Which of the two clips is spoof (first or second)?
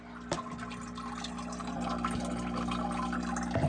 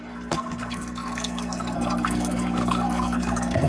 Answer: second